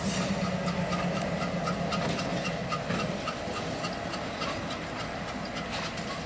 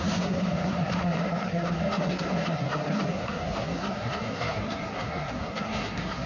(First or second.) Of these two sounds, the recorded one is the first